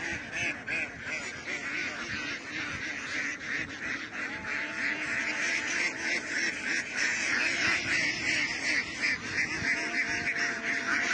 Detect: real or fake real